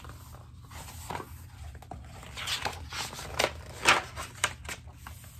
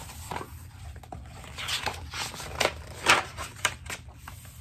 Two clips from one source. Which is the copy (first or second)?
second